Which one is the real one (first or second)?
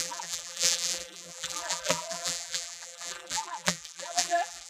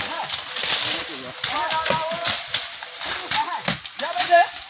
second